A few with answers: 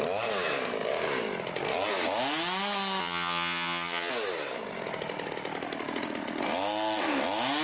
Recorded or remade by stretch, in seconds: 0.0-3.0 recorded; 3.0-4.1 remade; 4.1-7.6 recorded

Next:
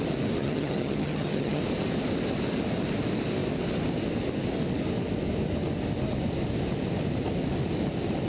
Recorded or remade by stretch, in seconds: 0.0-0.4 recorded; 0.4-1.6 remade; 1.6-8.3 recorded